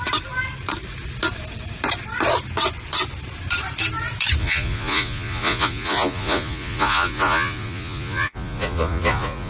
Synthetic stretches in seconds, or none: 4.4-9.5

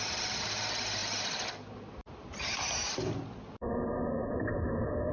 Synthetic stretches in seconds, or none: none

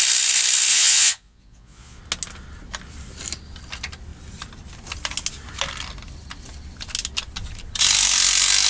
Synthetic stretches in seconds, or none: 0.7-2.0

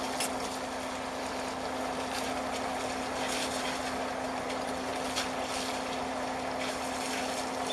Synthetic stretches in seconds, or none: none

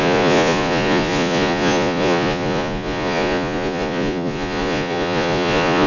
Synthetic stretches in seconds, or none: 0.0-5.9

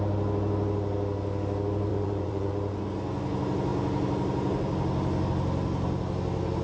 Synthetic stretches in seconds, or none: 1.9-2.5